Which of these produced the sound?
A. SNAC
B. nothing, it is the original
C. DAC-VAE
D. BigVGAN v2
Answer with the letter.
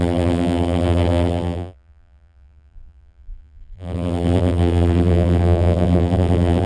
D